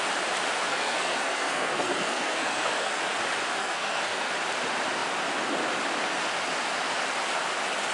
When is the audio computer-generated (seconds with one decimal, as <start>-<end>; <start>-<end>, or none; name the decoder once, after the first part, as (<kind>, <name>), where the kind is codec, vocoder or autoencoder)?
0.6-3.0 (codec, SNAC); 3.6-4.3